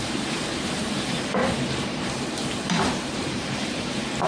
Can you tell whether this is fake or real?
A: fake